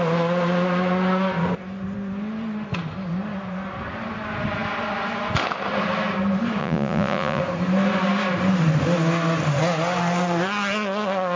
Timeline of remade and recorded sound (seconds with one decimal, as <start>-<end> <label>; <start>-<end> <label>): 0.0-6.6 recorded; 6.6-7.4 remade; 7.4-11.4 recorded